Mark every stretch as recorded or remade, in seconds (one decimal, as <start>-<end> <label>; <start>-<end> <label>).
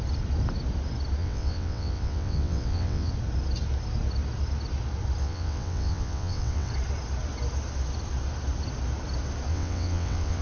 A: 0.0-1.2 recorded; 1.2-3.1 remade; 3.1-5.2 recorded; 5.2-6.7 remade; 6.7-9.5 recorded; 9.5-10.4 remade